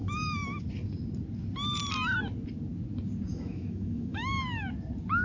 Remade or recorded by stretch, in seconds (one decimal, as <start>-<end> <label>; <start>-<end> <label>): 0.0-0.6 remade; 0.6-3.3 recorded; 3.3-4.4 remade; 4.4-5.2 recorded